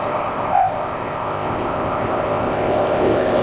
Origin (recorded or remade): remade